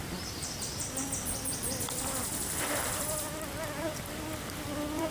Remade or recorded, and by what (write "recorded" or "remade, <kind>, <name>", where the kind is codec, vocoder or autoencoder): remade, vocoder, BigVGAN v2